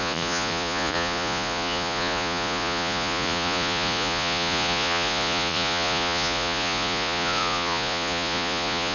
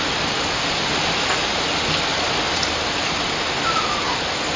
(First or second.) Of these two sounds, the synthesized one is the first